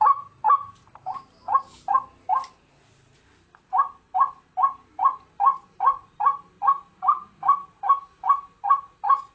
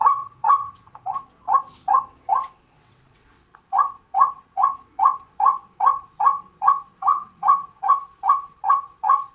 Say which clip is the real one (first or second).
first